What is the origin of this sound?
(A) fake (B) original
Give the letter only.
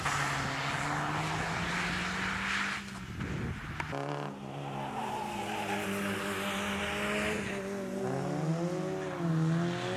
B